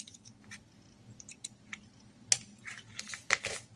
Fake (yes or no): no